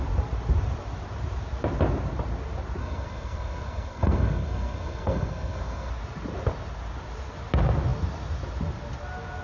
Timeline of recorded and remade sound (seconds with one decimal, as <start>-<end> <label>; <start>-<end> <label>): 0.0-2.8 recorded; 2.8-5.9 remade; 5.9-9.4 recorded